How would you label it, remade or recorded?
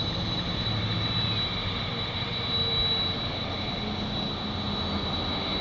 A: recorded